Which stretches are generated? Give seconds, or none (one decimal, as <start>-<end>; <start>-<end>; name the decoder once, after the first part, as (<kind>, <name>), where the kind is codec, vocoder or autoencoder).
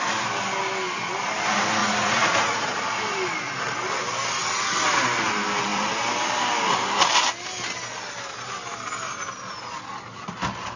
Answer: 1.8-2.7 (vocoder, Vocos)